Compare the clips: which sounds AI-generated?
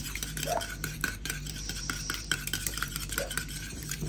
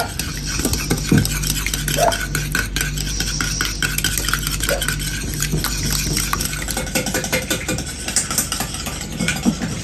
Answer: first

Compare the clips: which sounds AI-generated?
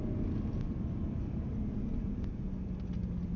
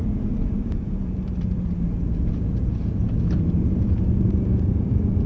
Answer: second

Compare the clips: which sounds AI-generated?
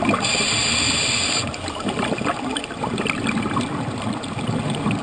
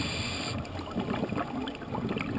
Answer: first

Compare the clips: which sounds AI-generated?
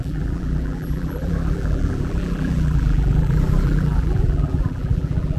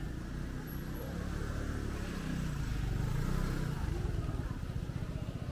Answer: first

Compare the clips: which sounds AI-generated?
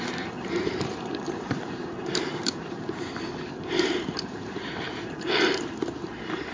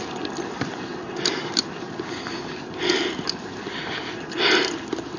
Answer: first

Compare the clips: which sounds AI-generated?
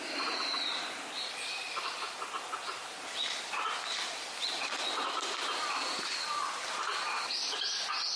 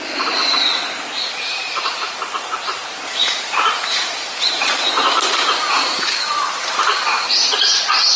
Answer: second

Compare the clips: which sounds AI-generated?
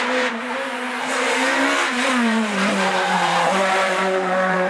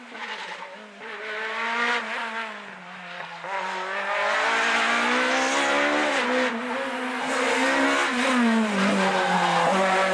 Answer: first